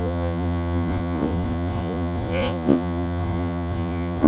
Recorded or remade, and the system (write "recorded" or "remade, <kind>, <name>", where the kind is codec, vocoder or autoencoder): remade, vocoder, Vocos